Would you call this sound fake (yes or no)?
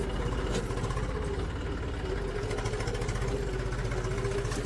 no